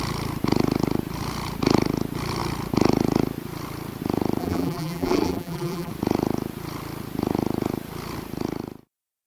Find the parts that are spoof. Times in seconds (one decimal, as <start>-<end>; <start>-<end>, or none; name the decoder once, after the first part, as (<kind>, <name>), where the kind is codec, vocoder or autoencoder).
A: 4.4-5.9 (vocoder, BigVGAN v2)